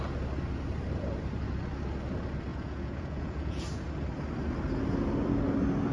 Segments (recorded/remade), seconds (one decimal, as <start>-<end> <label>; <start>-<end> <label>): 0.0-2.5 recorded; 2.5-3.6 remade; 3.6-5.9 recorded